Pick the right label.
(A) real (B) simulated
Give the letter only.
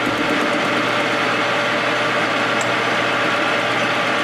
B